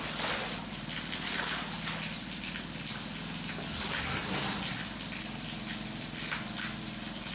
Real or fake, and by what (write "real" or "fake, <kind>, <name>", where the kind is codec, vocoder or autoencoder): real